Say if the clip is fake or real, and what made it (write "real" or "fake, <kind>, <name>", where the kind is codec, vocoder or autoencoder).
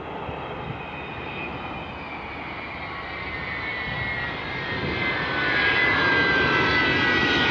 real